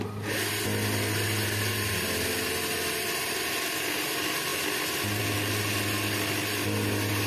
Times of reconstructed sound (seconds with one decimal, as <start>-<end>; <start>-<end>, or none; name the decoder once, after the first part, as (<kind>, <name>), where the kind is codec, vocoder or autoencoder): none